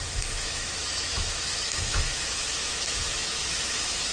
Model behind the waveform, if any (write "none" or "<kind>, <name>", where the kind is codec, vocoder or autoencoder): autoencoder, DAC-VAE